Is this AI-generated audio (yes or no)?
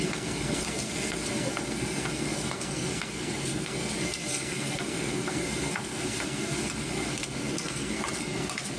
yes